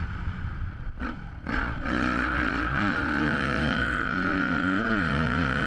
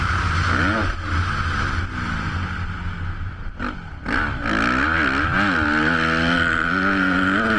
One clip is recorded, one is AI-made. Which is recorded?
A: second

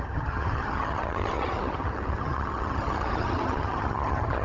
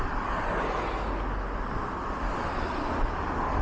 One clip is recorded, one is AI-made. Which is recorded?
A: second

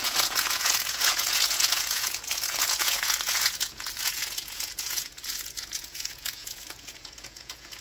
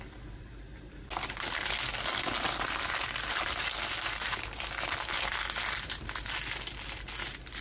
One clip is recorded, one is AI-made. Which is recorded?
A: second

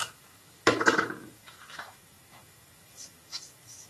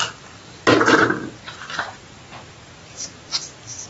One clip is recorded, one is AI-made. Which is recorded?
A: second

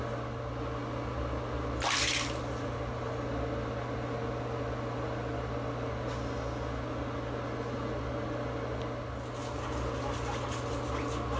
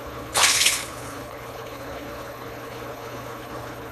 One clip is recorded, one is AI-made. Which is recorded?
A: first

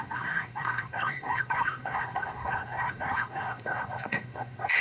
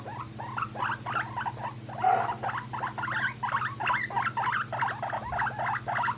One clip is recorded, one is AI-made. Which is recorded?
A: second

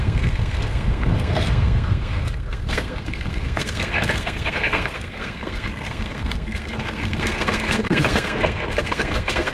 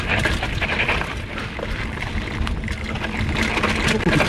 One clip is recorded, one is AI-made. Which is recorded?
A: second